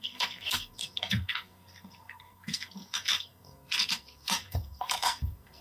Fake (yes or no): yes